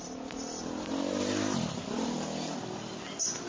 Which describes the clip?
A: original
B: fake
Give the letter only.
A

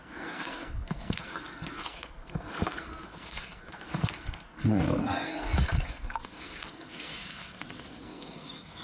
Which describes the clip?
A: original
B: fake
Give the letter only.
B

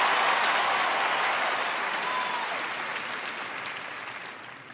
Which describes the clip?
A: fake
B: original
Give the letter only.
B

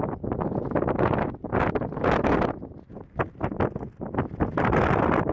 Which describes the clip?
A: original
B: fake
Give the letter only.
A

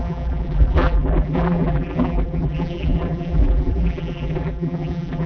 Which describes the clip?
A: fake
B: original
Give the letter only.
A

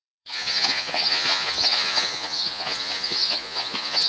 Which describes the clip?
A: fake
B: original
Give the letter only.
A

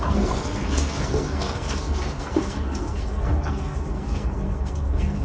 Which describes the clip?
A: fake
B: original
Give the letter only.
A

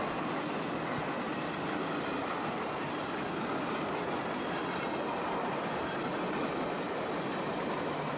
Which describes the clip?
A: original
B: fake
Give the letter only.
A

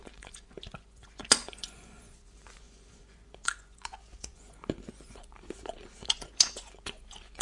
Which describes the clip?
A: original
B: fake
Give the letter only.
B